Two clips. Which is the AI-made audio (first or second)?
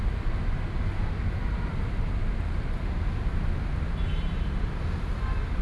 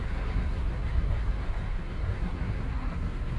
second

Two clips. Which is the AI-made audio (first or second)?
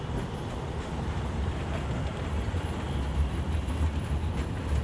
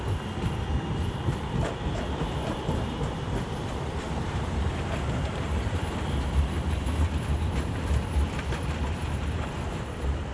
second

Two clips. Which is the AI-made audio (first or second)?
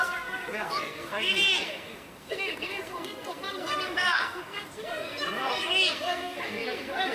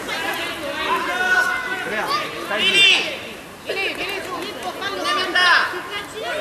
first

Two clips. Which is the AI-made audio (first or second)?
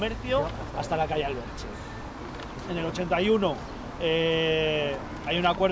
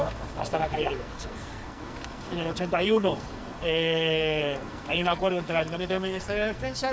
second